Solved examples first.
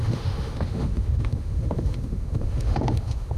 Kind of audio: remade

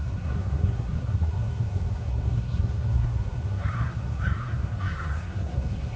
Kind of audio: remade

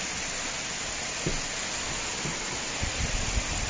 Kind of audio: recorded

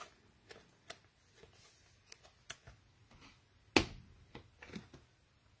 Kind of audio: recorded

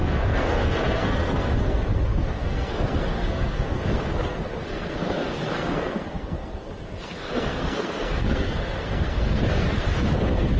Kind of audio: remade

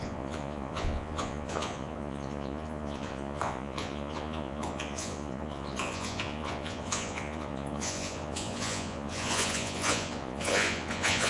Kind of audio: remade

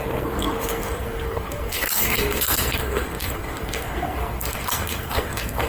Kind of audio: remade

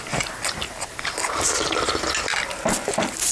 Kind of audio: recorded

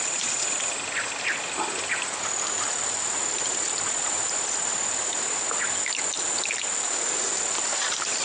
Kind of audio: recorded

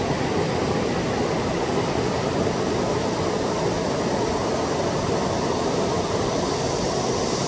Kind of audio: recorded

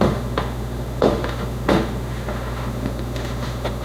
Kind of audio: remade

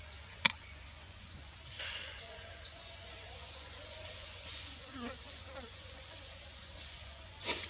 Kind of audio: remade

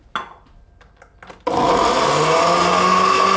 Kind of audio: recorded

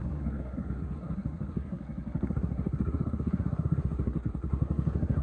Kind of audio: remade